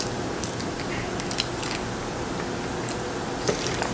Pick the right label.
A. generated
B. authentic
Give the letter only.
B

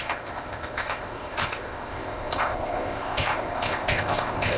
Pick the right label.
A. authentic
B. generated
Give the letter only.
B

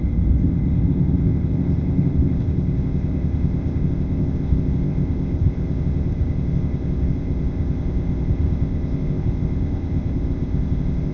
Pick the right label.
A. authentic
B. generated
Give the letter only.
B